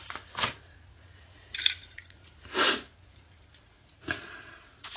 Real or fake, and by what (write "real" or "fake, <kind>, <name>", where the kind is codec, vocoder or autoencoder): fake, vocoder, Vocos